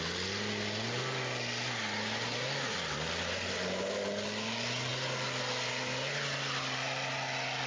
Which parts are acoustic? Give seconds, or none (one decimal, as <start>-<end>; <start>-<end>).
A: 0.0-7.7